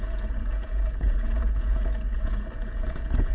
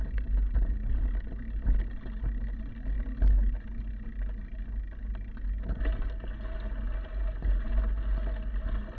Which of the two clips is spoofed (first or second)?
first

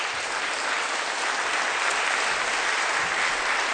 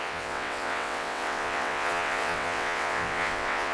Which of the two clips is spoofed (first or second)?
second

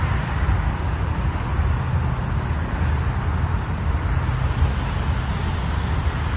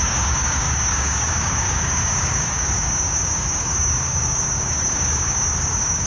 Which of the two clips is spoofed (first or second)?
second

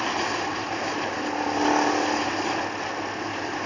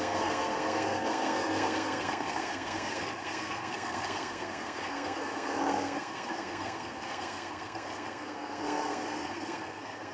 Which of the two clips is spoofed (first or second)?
second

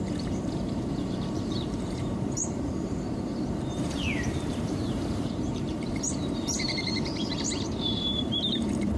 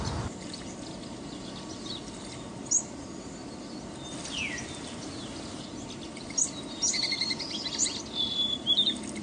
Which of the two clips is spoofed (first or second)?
first